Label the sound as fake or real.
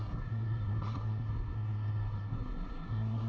fake